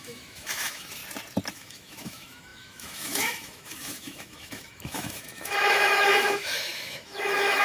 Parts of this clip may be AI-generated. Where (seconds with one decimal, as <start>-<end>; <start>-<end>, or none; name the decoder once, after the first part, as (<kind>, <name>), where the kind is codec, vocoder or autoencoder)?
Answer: 0.0-1.0 (autoencoder, DAC-VAE); 1.5-7.6